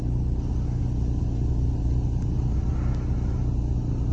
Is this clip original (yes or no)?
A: yes